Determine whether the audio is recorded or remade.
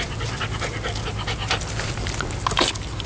recorded